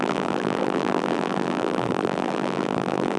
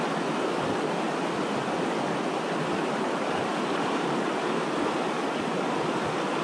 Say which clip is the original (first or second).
second